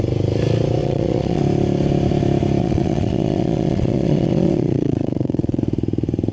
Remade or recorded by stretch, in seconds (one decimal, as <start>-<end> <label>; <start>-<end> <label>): 0.0-0.8 recorded; 0.8-1.4 remade; 1.4-2.6 recorded; 2.6-5.6 remade; 5.6-6.3 recorded